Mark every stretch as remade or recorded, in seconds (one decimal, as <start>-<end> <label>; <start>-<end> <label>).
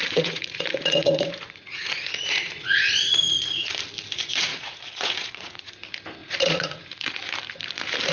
0.0-3.7 remade; 3.7-4.5 recorded; 4.5-5.7 remade; 5.7-6.2 recorded; 6.2-7.2 remade; 7.2-8.1 recorded